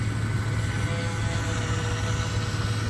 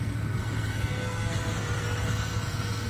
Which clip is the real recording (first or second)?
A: first